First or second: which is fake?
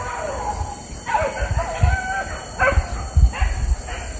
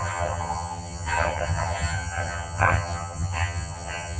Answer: second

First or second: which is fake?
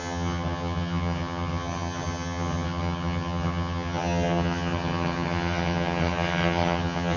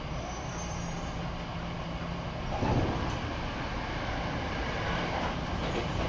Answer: first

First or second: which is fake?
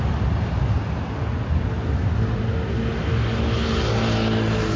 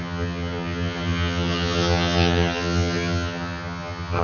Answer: second